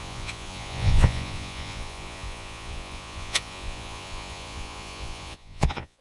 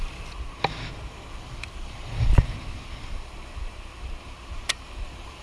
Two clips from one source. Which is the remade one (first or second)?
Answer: first